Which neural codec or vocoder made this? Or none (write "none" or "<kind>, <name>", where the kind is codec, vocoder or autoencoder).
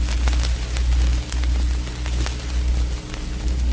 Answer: none